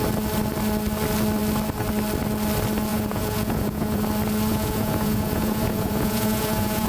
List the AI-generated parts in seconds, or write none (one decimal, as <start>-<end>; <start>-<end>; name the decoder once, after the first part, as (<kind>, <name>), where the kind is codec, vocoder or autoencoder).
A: 2.9-4.0 (vocoder, Vocos); 4.5-6.9